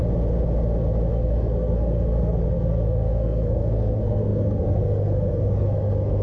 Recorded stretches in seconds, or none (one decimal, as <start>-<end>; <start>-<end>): 0.0-1.1